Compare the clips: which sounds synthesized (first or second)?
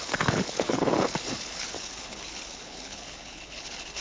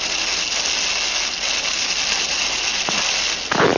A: first